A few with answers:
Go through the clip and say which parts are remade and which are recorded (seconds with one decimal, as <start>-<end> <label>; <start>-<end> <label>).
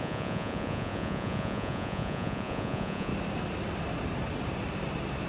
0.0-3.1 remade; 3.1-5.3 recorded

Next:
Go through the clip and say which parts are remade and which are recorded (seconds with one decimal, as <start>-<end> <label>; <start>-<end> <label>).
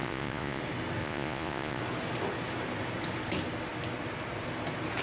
0.0-0.6 remade; 0.6-1.0 recorded; 1.0-1.8 remade; 1.8-5.0 recorded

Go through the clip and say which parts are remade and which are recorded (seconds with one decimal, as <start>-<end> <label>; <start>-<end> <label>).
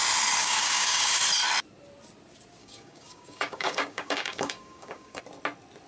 0.0-0.4 recorded; 0.4-1.2 remade; 1.2-2.6 recorded; 2.6-5.2 remade; 5.2-5.9 recorded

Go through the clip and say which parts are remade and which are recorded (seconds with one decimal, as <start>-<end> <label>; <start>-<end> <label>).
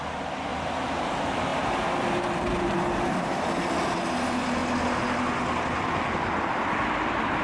0.0-7.4 recorded